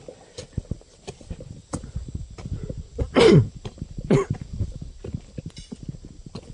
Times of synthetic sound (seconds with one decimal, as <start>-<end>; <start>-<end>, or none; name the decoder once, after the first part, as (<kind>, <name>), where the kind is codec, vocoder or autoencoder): 1.6-5.5 (vocoder, BigVGAN v2)

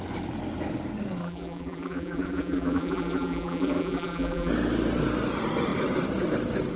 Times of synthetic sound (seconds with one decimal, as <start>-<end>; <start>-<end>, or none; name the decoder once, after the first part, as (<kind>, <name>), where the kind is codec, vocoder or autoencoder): 1.2-4.5 (vocoder, BigVGAN v2)

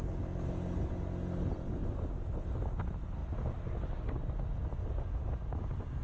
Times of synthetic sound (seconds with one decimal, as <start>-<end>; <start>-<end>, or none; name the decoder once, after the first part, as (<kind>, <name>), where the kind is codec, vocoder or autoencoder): none

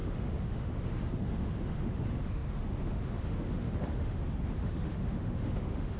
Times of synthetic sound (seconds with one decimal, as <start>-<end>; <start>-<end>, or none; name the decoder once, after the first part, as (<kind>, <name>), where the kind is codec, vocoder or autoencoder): 0.0-6.0 (autoencoder, DAC-VAE)

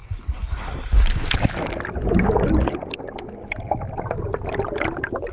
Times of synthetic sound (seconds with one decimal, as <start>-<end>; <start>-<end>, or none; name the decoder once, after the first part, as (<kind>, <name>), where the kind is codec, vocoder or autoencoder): none

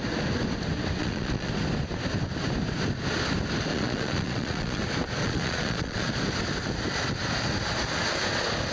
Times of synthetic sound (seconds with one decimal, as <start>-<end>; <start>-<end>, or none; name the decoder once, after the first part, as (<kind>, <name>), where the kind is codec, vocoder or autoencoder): 1.0-1.5 (vocoder, Vocos); 3.7-4.8; 5.2-6.1

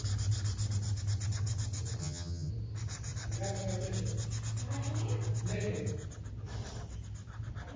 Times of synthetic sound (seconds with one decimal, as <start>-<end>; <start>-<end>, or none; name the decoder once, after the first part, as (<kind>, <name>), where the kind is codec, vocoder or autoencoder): 2.0-2.5 (vocoder, HiFi-GAN)